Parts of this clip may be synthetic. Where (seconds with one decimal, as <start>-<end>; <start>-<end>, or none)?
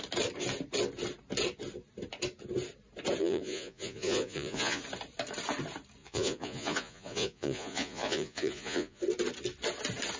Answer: 3.2-4.8; 6.0-9.0